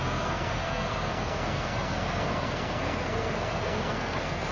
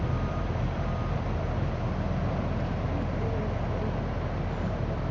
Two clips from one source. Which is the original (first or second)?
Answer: second